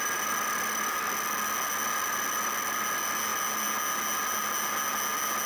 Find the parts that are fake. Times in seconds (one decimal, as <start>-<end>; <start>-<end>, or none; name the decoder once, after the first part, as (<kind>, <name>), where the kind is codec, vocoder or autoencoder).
none